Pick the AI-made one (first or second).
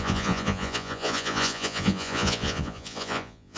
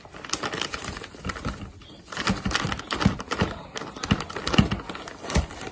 first